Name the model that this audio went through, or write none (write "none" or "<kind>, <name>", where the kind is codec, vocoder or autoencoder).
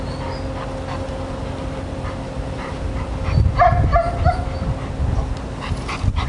none